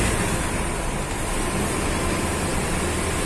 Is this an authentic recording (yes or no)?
yes